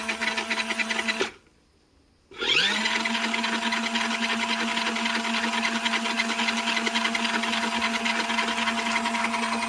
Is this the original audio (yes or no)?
yes